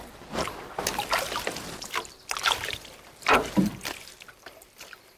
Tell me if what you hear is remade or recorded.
recorded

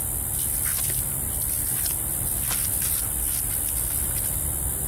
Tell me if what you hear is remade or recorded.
recorded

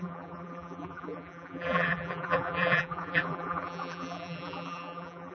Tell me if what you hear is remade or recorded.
remade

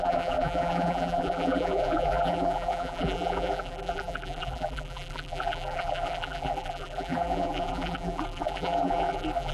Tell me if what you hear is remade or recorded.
remade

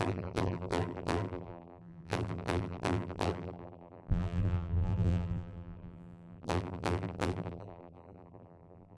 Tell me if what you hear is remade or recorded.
remade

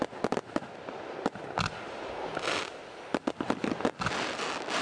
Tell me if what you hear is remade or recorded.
recorded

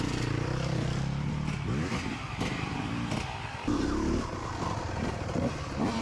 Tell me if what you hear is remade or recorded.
remade